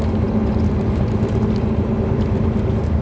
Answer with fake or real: real